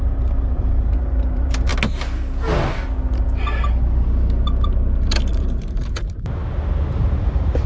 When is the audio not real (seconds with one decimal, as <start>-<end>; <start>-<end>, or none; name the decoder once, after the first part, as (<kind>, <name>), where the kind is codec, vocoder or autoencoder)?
0.0-1.7 (vocoder, BigVGAN v2); 5.3-6.4; 7.2-7.7